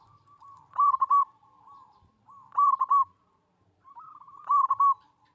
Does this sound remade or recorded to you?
remade